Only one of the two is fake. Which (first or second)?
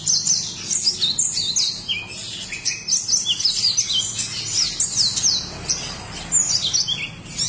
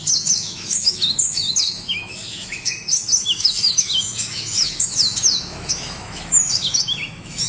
second